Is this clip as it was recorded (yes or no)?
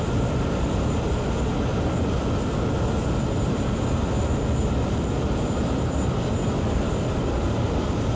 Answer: yes